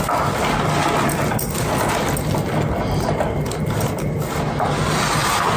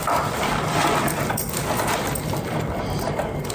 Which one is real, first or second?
first